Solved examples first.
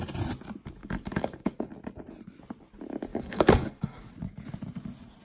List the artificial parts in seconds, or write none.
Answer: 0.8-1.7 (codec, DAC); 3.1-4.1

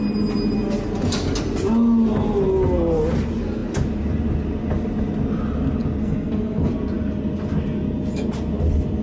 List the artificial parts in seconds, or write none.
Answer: 6.0-6.7 (codec, SNAC)

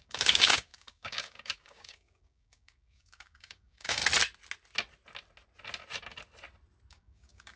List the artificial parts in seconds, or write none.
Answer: 0.0-4.0 (codec, DAC); 6.9-7.6

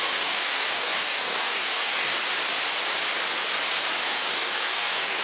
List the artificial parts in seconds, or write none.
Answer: 0.0-2.2 (codec, DAC); 4.0-5.2

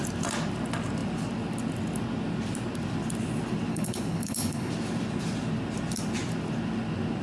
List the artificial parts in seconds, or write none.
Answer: 3.7-4.7 (codec, HILCodec)

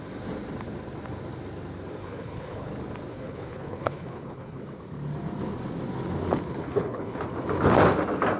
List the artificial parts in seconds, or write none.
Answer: 2.0-2.7 (codec, HILCodec); 3.1-4.6; 6.6-7.2

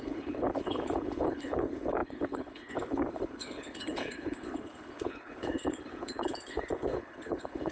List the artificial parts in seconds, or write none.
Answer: 0.0-7.7 (codec, HILCodec)